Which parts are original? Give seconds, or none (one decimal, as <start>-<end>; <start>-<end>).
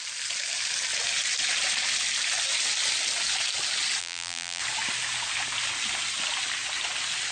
0.0-4.0; 4.6-7.3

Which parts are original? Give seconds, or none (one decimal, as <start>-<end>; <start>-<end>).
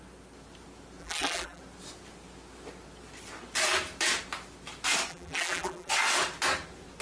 0.0-1.0; 1.6-5.1; 5.9-7.0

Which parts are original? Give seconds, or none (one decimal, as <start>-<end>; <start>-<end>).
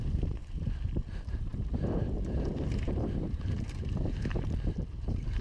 1.5-2.6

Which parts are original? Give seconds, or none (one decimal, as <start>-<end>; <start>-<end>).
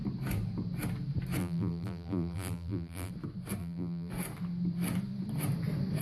0.0-1.4; 3.1-3.6; 4.1-6.0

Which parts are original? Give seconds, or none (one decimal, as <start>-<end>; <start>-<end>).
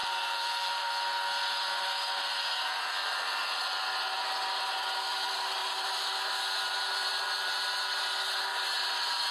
0.9-5.6; 6.1-9.3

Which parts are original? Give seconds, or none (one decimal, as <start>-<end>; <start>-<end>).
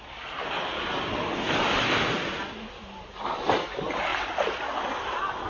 0.0-4.1